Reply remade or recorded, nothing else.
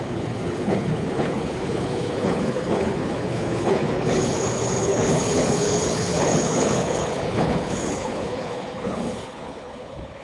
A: remade